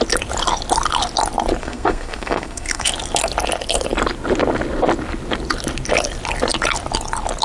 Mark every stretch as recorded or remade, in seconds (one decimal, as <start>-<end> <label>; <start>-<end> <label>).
0.0-1.6 recorded; 1.6-2.9 remade; 2.9-7.4 recorded